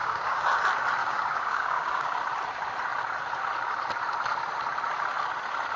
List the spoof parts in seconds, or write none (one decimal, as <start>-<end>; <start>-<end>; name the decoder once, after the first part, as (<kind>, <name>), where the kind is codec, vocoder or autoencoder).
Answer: 0.0-0.6 (codec, DAC); 1.0-2.2

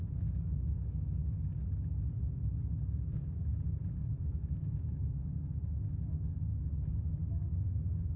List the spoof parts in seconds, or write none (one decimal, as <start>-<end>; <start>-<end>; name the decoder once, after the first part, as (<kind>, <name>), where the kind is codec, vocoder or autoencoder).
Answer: 0.0-1.6 (codec, DAC); 3.1-3.5; 4.3-6.5; 7.3-8.2

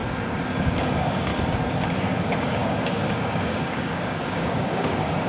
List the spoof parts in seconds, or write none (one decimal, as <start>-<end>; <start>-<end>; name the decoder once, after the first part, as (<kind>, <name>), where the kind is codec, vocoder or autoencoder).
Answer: 0.6-1.3 (codec, DAC); 2.0-5.3

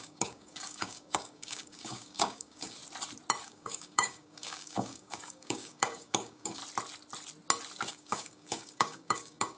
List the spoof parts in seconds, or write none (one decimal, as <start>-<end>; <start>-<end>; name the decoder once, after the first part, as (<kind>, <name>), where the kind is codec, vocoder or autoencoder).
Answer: 0.0-2.8 (codec, DAC); 3.4-6.6; 7.9-9.6

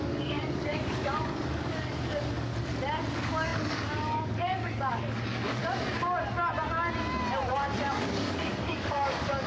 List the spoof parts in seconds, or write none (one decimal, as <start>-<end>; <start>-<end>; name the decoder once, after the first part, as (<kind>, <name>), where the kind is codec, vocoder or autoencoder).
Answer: 0.0-2.5 (codec, DAC); 3.1-5.6; 7.9-9.5

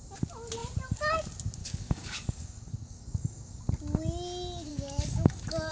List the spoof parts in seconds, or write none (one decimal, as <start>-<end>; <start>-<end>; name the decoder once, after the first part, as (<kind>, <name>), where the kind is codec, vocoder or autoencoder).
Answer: 1.6-3.6 (codec, DAC); 4.7-5.7

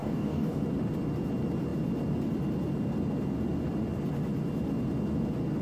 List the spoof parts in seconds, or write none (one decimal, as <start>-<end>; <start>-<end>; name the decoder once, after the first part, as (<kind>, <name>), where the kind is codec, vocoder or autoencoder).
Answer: 0.0-0.6 (codec, DAC)

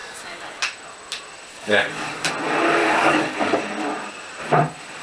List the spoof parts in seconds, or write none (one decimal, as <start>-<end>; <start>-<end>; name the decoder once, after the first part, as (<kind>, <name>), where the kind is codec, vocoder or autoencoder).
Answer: 0.0-0.6 (codec, DAC); 1.5-2.3; 2.8-3.6